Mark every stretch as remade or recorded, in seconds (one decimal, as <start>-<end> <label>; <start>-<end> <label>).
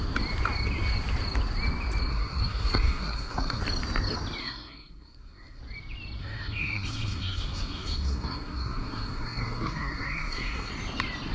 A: 0.0-2.1 recorded; 2.1-3.6 remade; 3.6-4.4 recorded; 4.4-5.6 remade; 5.6-6.2 recorded; 6.2-10.7 remade; 10.7-11.3 recorded